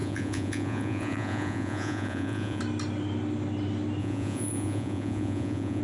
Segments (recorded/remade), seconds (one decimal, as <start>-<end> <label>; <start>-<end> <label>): 0.0-2.6 remade; 2.6-4.0 recorded; 4.0-5.8 remade